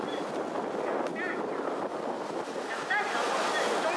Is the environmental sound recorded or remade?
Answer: recorded